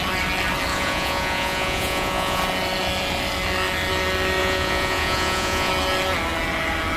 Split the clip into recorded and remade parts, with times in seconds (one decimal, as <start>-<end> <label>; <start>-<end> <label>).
0.0-0.7 recorded; 0.7-2.4 remade; 2.4-4.4 recorded; 4.4-5.7 remade; 5.7-7.0 recorded